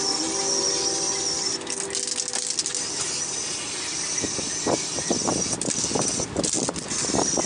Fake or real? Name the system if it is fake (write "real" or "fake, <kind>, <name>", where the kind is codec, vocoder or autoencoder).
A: real